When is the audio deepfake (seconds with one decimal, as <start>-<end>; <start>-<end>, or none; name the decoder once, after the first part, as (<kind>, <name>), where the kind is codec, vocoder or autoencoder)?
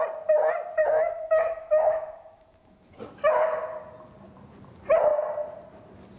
0.8-3.0 (autoencoder, DAC-VAE)